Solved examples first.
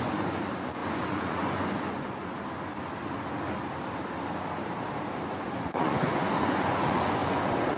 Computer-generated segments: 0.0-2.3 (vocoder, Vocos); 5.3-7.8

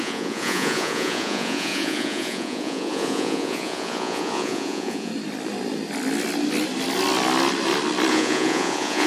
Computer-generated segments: 0.0-5.1 (vocoder, Vocos); 8.1-9.1

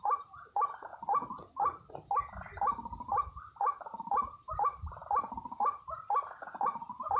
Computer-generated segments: 0.0-0.9 (vocoder, BigVGAN v2); 4.5-7.2

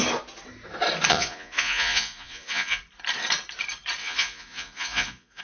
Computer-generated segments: 1.1-2.8 (vocoder, Vocos); 4.0-5.4

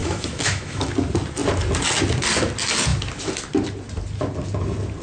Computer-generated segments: 0.0-0.9 (autoencoder, DAC-VAE)